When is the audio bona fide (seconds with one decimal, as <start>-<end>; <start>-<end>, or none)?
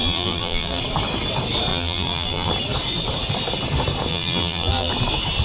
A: 0.8-1.7; 2.5-4.1; 4.9-5.4